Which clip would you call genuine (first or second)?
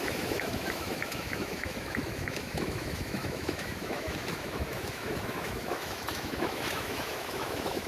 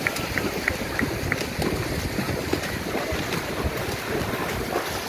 second